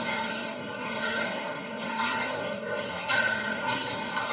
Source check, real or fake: fake